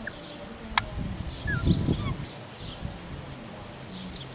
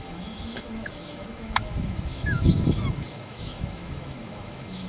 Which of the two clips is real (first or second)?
first